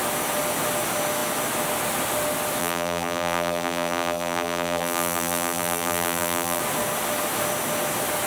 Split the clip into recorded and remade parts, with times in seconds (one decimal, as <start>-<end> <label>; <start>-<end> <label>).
0.0-2.6 recorded; 2.6-6.6 remade; 6.6-8.3 recorded